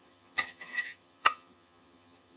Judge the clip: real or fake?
fake